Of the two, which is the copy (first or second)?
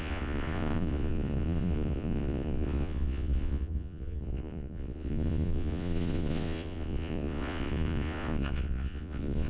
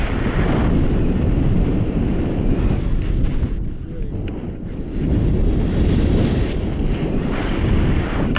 first